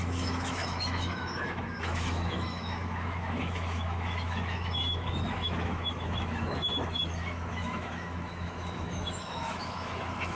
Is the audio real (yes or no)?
no